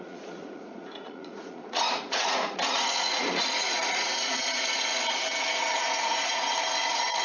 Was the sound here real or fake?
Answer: fake